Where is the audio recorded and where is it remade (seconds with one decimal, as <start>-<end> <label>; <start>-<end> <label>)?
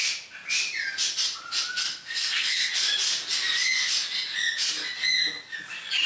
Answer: 0.0-1.8 recorded; 1.8-2.7 remade; 2.7-6.1 recorded